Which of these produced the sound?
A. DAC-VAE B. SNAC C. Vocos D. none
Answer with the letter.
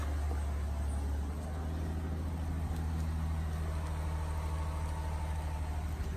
D